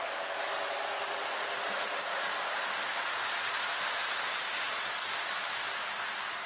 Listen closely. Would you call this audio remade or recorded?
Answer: recorded